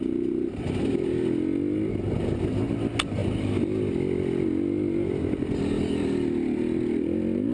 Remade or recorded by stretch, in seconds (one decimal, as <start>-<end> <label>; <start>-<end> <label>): 0.0-7.5 recorded